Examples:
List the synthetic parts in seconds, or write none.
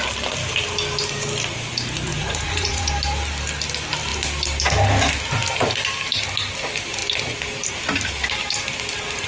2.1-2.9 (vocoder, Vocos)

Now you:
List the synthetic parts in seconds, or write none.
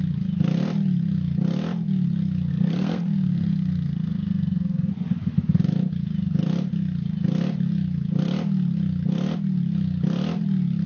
2.5-4.9 (codec, SNAC)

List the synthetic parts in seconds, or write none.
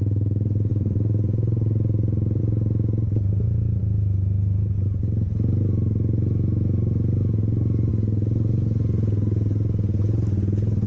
0.7-2.4 (vocoder, BigVGAN v2)